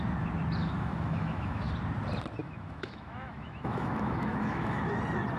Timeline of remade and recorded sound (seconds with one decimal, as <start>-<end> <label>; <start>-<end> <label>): 0.0-0.6 recorded; 0.6-1.7 remade; 1.7-2.4 recorded; 2.4-5.0 remade; 5.0-5.4 recorded